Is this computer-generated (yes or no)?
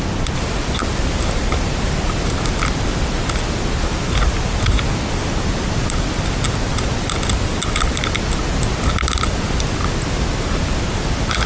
no